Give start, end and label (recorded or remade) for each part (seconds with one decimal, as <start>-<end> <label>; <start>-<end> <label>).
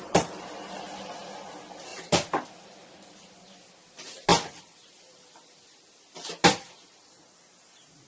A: 0.0-1.9 recorded; 1.9-2.9 remade; 2.9-8.1 recorded